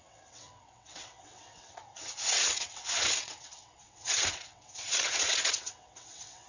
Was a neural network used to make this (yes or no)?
yes